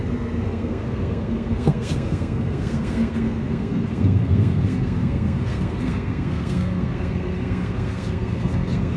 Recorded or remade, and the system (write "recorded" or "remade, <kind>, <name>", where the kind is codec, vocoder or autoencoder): remade, codec, SNAC